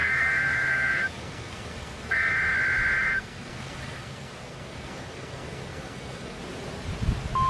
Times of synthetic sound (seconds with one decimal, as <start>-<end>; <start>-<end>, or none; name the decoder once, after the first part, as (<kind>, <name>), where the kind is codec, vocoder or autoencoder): 0.0-2.3 (codec, SNAC); 3.1-6.4